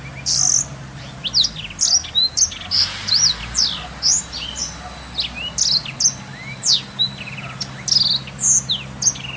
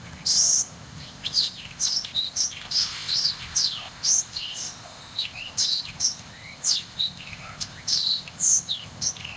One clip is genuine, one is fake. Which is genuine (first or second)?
first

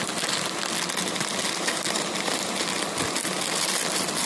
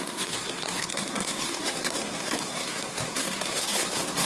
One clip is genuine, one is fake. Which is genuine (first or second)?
first